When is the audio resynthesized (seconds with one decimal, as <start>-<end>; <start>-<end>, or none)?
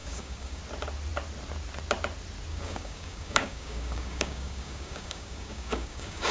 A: 0.0-0.6; 2.5-6.3